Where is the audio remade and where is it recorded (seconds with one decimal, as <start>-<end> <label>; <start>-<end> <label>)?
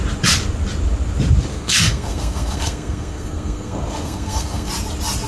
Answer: 0.0-1.5 recorded; 1.5-4.7 remade; 4.7-5.3 recorded